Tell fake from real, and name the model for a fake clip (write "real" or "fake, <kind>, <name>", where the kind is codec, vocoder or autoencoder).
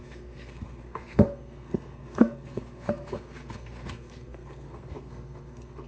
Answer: fake, codec, SNAC